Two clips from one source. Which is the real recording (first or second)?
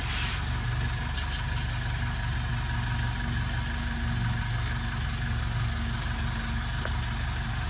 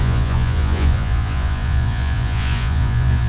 first